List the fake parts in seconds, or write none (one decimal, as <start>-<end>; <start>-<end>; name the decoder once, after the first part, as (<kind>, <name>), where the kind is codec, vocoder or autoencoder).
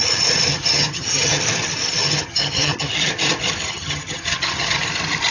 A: 0.5-1.4 (vocoder, HiFi-GAN); 2.0-2.9; 3.7-4.8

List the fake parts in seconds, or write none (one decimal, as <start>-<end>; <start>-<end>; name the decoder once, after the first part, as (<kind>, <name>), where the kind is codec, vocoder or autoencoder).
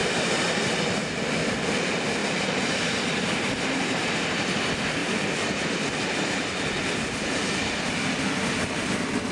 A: 0.0-0.7 (vocoder, BigVGAN v2); 2.2-3.8; 5.0-6.6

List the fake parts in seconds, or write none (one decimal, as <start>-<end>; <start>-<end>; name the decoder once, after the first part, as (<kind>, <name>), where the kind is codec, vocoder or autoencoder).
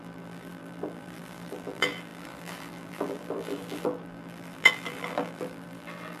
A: 0.0-6.2 (vocoder, BigVGAN v2)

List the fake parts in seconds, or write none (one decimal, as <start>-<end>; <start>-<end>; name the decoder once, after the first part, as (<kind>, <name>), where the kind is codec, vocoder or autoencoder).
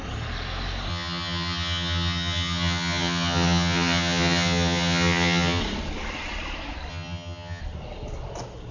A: 0.9-5.6 (vocoder, HiFi-GAN); 6.9-7.6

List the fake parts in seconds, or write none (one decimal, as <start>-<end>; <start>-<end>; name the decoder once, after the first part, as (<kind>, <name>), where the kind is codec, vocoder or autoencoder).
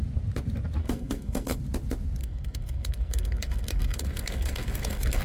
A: 0.8-1.6 (codec, SNAC); 2.2-5.2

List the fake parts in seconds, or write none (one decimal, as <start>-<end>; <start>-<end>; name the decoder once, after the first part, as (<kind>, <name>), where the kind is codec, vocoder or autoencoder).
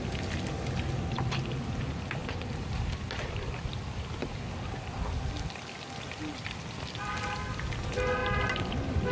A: 2.2-6.6 (vocoder, BigVGAN v2)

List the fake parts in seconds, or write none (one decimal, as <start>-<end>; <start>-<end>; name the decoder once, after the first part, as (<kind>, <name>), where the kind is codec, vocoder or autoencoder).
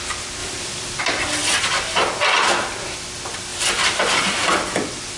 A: 0.4-1.0 (vocoder, BigVGAN v2); 3.5-5.2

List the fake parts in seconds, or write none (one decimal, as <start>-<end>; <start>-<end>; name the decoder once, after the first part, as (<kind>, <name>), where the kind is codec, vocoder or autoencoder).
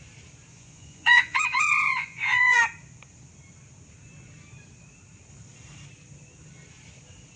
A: 0.5-2.6 (vocoder, Vocos)